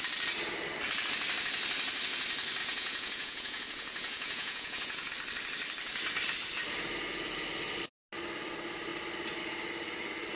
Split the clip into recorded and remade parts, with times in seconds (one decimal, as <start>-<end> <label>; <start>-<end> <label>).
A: 0.0-2.6 recorded; 2.6-5.1 remade; 5.1-10.3 recorded